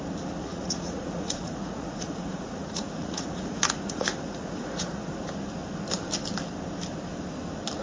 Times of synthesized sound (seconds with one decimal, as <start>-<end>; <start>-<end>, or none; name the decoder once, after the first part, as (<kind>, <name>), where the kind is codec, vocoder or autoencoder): 0.4-5.1 (vocoder, Vocos)